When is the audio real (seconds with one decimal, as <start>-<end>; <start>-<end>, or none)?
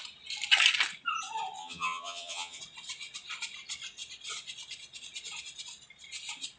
0.0-1.6; 2.6-6.6